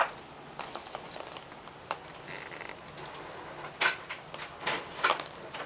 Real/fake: real